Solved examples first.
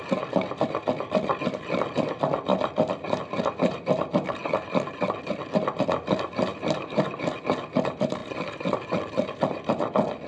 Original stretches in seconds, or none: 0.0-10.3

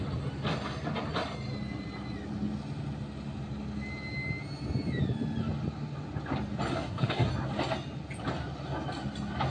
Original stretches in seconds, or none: 0.0-6.7; 7.3-9.5

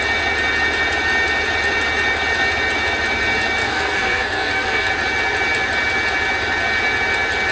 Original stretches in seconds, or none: 0.0-3.6; 4.9-7.5

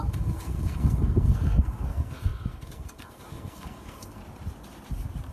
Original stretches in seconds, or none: 4.2-5.3

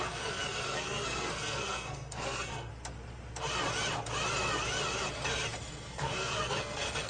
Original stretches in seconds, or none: 2.7-5.7

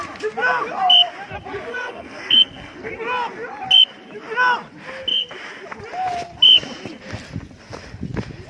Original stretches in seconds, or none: 0.0-1.7; 2.9-8.5

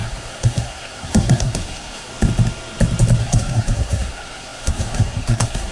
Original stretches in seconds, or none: 2.1-3.2

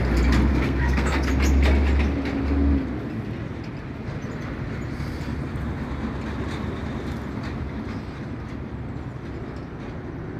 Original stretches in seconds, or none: 0.0-0.5; 1.3-10.4